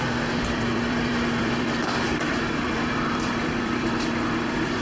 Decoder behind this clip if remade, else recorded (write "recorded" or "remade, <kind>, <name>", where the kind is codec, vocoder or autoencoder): remade, vocoder, BigVGAN v2